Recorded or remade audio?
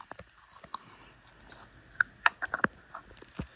recorded